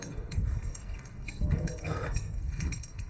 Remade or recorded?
remade